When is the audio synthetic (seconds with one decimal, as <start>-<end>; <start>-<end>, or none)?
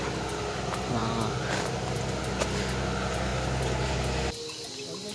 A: none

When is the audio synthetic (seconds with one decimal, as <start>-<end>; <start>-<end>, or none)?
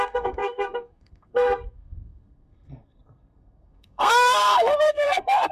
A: 0.0-5.5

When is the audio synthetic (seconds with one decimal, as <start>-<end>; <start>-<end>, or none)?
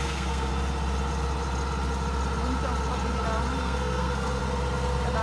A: 0.0-0.5; 3.6-4.4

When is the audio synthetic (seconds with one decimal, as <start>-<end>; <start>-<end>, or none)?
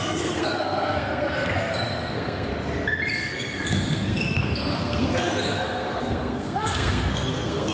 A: 0.0-2.5; 3.1-7.7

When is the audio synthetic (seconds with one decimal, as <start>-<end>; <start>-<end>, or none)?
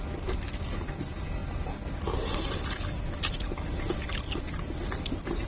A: none